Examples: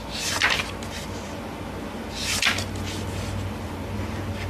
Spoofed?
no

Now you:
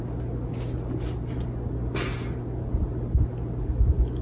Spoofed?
no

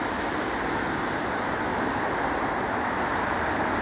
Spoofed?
no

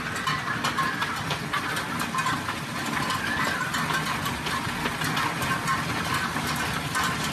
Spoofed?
no